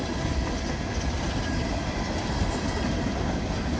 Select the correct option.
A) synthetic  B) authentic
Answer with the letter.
B